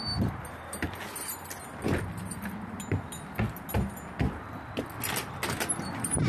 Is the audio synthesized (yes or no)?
no